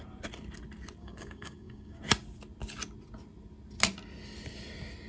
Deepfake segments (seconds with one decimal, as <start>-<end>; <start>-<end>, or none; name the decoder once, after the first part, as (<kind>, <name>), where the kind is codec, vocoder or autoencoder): 1.0-2.0 (codec, DAC)

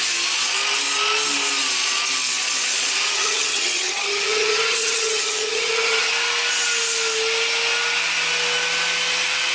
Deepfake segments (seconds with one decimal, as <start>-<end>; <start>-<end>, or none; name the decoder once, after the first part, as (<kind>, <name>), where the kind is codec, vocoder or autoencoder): 3.1-6.1 (vocoder, HiFi-GAN)

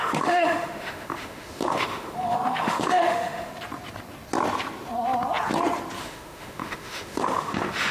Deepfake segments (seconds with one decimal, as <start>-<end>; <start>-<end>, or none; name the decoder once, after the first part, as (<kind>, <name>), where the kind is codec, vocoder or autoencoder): 0.0-3.5 (autoencoder, DAC-VAE); 6.0-7.9